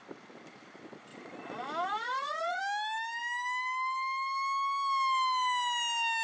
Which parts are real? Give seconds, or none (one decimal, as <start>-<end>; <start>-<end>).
0.0-1.1; 2.6-6.2